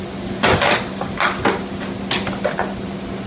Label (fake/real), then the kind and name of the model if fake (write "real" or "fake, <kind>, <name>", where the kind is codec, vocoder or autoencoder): real